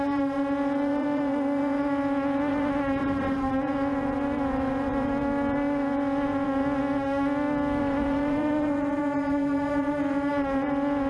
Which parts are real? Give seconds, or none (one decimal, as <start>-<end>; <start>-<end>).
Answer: 6.6-7.8